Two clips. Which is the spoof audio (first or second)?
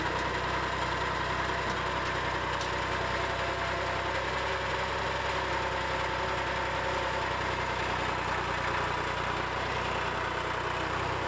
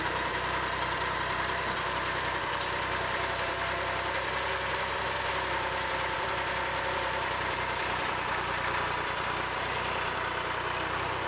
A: second